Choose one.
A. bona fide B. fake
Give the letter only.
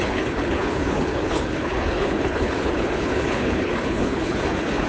B